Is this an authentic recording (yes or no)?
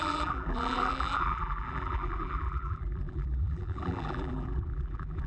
no